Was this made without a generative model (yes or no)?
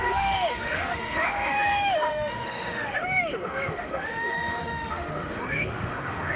no